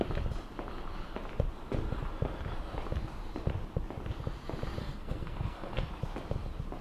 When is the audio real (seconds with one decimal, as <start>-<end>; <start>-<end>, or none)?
0.0-4.8; 5.9-6.8